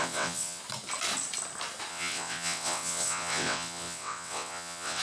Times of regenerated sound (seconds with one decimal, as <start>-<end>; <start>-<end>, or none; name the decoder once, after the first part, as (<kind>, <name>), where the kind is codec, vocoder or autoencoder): 0.0-0.6 (vocoder, WaveNeXt); 1.9-5.0